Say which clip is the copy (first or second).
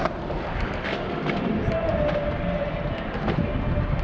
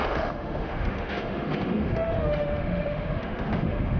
second